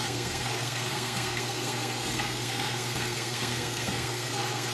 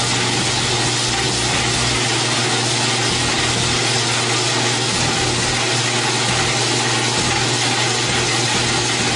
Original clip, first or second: second